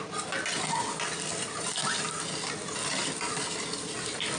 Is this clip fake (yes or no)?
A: no